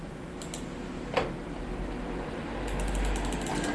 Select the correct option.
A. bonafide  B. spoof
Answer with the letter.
A